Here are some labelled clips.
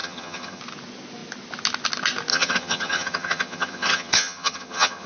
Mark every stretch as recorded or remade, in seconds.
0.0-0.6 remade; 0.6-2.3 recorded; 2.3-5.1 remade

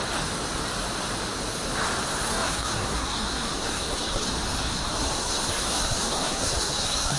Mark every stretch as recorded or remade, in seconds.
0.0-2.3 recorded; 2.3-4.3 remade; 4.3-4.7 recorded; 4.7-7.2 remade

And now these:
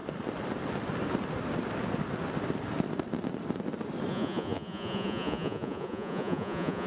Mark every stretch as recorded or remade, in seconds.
0.0-4.1 recorded; 4.1-6.9 remade

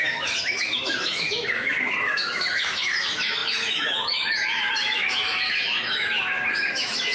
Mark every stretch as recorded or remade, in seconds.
0.0-7.1 remade